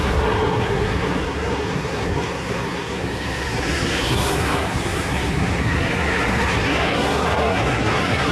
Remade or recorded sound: remade